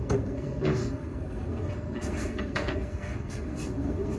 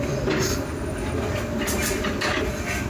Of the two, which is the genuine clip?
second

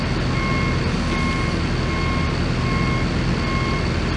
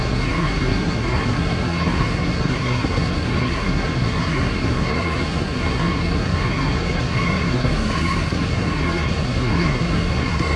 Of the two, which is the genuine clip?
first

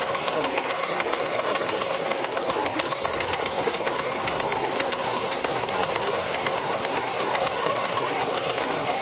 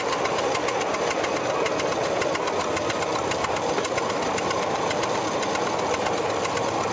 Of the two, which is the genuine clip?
second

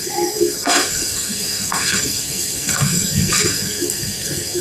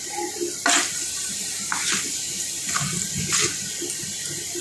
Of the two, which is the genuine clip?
second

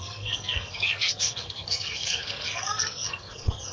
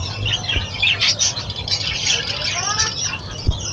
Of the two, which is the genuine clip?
second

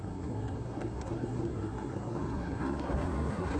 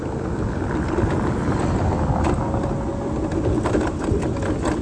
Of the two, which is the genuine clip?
second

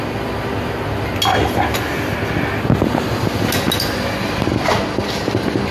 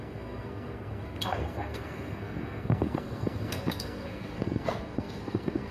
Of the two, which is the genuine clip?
first